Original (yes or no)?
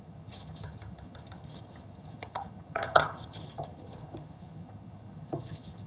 no